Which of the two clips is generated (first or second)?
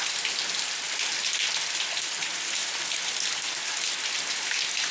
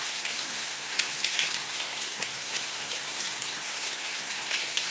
second